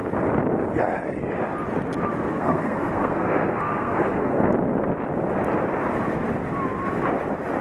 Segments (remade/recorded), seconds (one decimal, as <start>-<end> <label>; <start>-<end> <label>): 0.0-2.3 recorded; 2.3-4.5 remade; 4.5-7.6 recorded